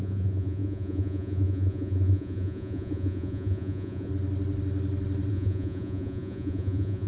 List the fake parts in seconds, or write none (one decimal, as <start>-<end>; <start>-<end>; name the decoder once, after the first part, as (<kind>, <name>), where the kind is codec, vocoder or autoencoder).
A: 0.0-4.1 (vocoder, Vocos); 5.3-7.1